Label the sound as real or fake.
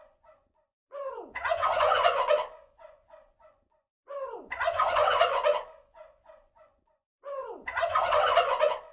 fake